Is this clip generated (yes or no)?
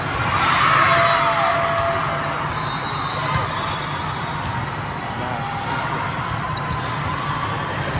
no